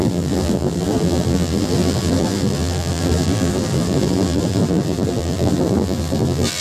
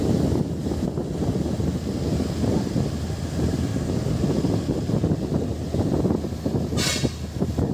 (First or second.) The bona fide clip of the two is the second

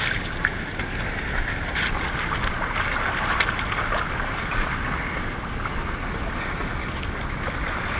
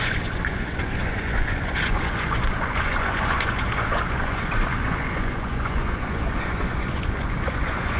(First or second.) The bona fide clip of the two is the first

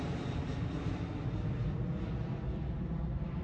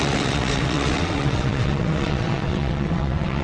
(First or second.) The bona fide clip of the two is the first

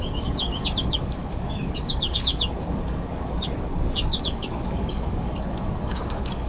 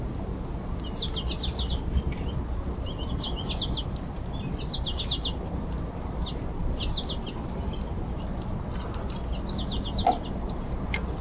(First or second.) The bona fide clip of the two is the second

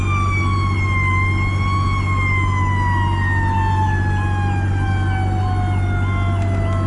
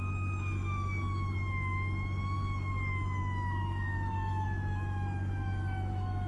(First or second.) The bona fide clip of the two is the first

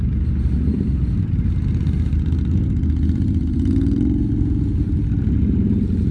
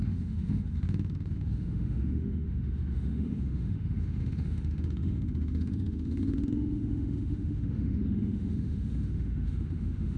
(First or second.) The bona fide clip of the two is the first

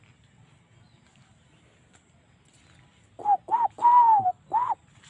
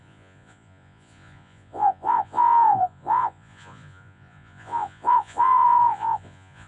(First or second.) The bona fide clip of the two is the first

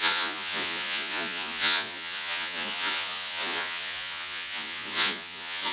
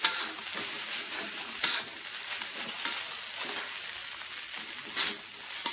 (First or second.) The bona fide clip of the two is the second